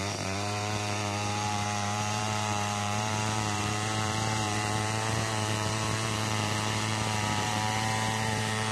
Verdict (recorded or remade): remade